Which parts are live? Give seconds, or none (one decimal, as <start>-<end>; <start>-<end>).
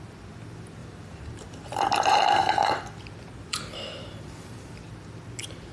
0.0-0.8; 2.8-3.5; 4.7-5.7